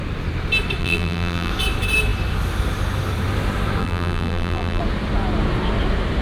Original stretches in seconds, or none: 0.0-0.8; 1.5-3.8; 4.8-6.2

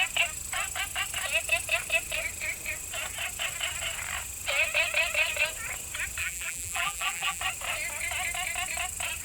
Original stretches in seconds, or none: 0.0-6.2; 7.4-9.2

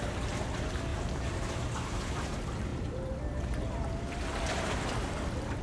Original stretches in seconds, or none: 0.0-2.7; 3.6-5.6